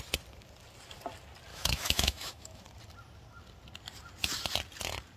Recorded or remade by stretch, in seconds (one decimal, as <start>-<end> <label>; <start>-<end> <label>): 0.0-1.5 recorded; 1.5-2.6 remade; 2.6-5.2 recorded